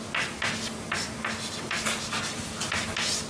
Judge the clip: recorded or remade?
recorded